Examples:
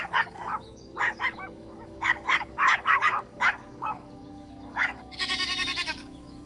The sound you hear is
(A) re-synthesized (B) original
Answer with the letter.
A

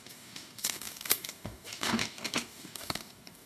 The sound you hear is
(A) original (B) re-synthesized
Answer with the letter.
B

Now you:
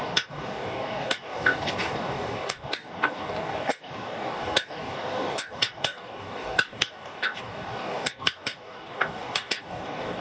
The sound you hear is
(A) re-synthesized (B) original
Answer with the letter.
A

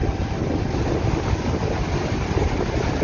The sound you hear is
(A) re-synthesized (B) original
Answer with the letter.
B